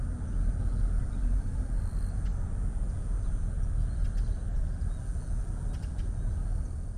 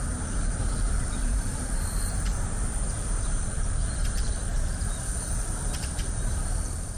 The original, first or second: first